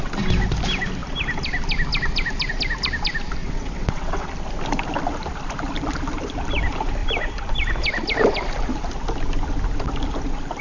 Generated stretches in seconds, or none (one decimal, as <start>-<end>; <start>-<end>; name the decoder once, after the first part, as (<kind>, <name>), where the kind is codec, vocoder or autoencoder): 3.4-4.3 (vocoder, WaveNeXt)